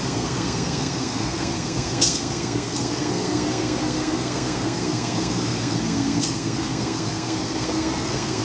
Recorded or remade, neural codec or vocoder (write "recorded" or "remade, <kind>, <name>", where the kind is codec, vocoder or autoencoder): remade, codec, SNAC